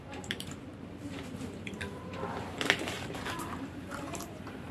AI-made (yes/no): yes